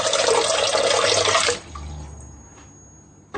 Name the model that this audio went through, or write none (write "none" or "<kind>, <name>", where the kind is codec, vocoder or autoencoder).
none